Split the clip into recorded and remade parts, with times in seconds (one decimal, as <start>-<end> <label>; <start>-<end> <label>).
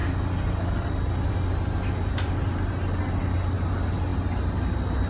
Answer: 0.0-5.1 recorded